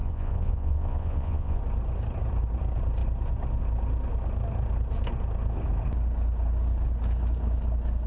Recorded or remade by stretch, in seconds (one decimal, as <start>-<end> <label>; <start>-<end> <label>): 0.0-1.6 remade; 1.6-8.1 recorded